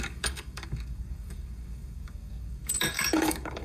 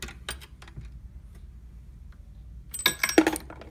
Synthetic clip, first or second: first